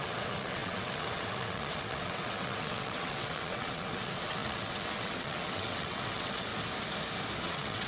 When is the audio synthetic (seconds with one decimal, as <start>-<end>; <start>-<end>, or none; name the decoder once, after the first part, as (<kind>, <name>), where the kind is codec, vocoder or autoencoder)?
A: 0.0-6.5 (vocoder, WaveNeXt); 7.4-7.9